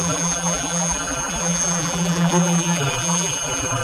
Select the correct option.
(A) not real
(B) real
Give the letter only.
A